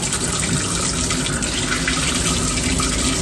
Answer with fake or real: real